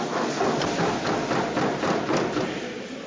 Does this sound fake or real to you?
real